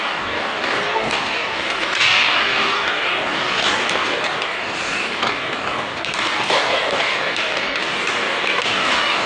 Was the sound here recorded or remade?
remade